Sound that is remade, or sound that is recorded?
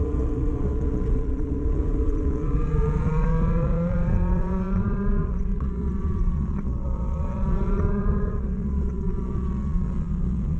remade